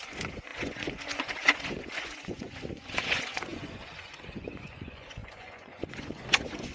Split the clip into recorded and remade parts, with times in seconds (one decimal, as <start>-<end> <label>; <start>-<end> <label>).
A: 0.0-6.7 remade